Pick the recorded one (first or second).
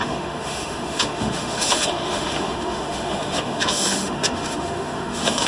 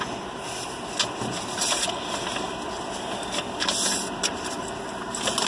second